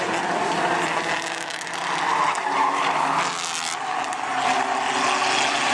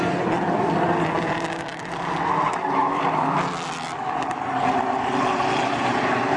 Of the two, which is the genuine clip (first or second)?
first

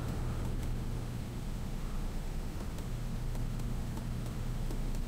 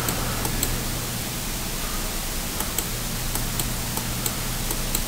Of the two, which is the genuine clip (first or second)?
second